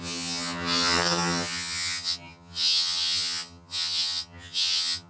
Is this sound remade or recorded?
remade